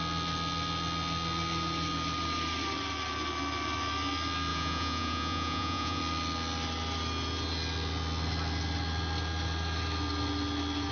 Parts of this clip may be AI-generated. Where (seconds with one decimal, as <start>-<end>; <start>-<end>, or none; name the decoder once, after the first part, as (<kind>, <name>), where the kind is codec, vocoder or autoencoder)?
4.5-6.0 (vocoder, Vocos)